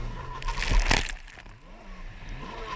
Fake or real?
real